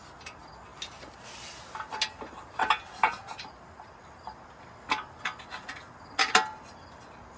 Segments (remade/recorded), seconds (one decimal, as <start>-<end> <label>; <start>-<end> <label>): 0.0-7.4 recorded